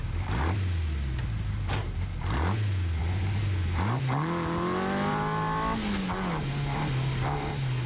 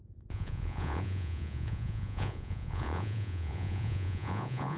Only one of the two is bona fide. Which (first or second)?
first